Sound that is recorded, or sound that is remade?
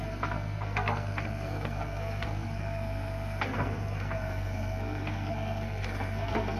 remade